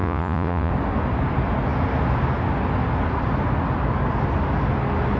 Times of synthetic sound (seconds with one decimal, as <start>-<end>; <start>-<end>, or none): 0.0-0.7